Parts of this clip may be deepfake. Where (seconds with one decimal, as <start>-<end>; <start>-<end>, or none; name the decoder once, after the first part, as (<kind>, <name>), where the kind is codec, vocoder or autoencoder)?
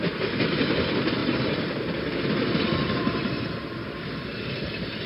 none